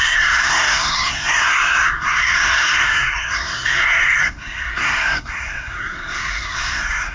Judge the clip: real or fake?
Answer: fake